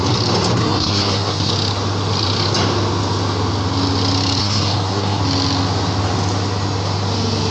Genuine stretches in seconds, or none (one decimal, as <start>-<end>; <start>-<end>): 0.0-0.6; 1.5-4.4; 5.2-7.5